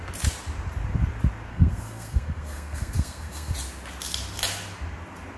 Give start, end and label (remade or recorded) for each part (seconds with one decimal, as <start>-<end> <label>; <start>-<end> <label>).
0.0-1.5 recorded; 1.5-3.5 remade; 3.5-5.4 recorded